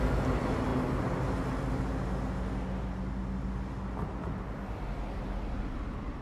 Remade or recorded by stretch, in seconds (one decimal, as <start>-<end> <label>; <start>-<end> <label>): 0.0-6.2 recorded